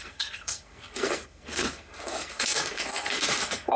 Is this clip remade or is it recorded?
remade